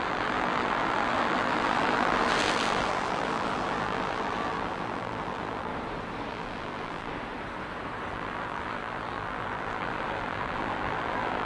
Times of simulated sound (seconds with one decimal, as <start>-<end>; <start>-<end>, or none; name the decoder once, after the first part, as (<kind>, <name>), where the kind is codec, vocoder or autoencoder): 0.0-5.7 (vocoder, BigVGAN v2); 6.3-7.1; 8.1-11.5